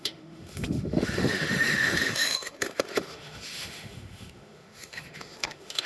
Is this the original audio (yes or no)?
no